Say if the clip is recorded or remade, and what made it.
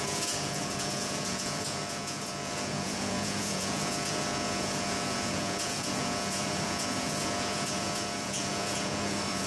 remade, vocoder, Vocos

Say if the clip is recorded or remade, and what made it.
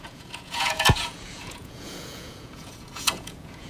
remade, vocoder, Vocos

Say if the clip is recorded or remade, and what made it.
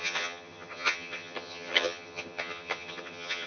remade, vocoder, HiFi-GAN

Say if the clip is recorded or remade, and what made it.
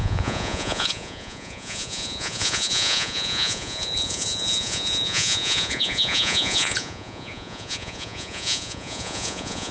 remade, vocoder, Vocos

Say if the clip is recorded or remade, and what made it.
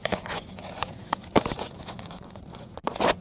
remade, vocoder, Vocos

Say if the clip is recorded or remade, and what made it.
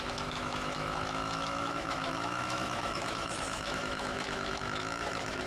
remade, autoencoder, DAC-VAE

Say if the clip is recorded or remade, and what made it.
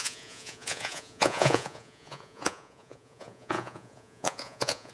remade, vocoder, Vocos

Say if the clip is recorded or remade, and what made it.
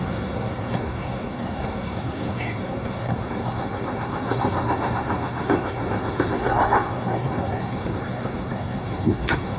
remade, codec, SNAC